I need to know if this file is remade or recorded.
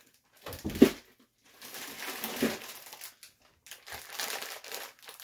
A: recorded